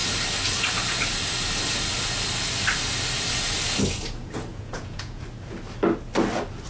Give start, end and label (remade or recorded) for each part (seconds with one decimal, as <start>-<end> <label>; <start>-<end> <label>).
0.0-4.5 recorded; 4.5-5.2 remade; 5.2-6.7 recorded